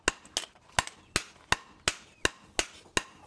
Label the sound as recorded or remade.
recorded